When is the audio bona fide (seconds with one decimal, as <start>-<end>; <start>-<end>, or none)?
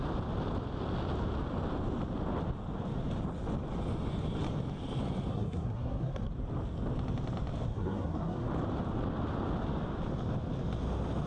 0.0-5.3; 6.3-7.7; 8.5-11.3